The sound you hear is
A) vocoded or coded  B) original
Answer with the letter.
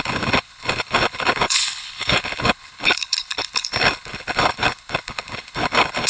A